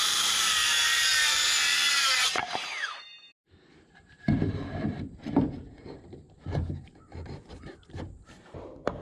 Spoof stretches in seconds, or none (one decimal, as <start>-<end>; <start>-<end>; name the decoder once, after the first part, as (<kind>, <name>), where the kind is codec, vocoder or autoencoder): 0.0-9.0 (vocoder, BigVGAN v2)